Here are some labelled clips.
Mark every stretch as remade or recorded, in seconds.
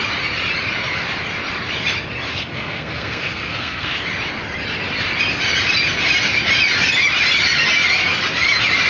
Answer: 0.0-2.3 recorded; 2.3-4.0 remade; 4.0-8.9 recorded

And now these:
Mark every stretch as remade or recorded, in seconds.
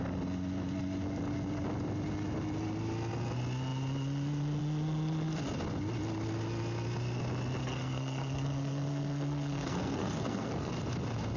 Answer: 0.0-7.6 recorded; 7.6-10.7 remade; 10.7-11.4 recorded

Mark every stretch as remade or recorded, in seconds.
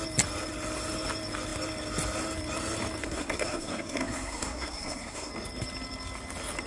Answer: 0.0-3.0 recorded; 3.0-5.3 remade; 5.3-6.7 recorded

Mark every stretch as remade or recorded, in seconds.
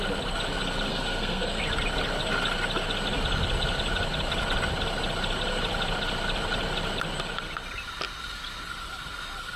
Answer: 0.0-0.9 recorded; 0.9-1.6 remade; 1.6-9.6 recorded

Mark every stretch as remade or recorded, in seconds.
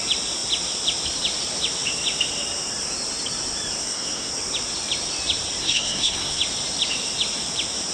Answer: 0.0-3.8 recorded; 3.8-4.3 remade; 4.3-5.6 recorded; 5.6-6.4 remade; 6.4-7.9 recorded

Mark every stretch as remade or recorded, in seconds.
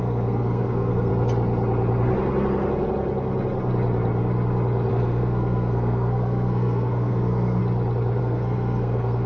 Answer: 0.0-1.1 remade; 1.1-4.9 recorded; 4.9-7.6 remade; 7.6-8.2 recorded; 8.2-9.3 remade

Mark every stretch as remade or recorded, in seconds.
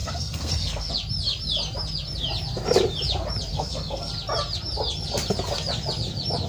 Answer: 0.0-0.9 remade; 0.9-3.5 recorded; 3.5-4.1 remade; 4.1-6.5 recorded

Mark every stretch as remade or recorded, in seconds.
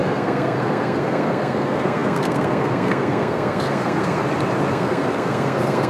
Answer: 0.0-4.2 remade; 4.2-4.7 recorded; 4.7-5.9 remade